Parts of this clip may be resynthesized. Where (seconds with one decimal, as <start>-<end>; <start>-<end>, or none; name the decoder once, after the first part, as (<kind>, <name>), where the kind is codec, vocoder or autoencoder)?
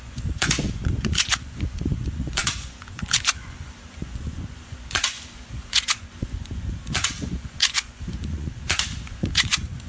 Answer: 0.0-9.9 (vocoder, Vocos)